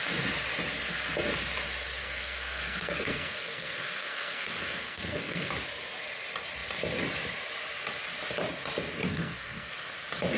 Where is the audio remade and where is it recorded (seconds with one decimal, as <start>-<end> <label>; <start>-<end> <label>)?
0.0-2.0 recorded; 2.0-5.5 remade; 5.5-9.1 recorded; 9.1-9.7 remade; 9.7-10.4 recorded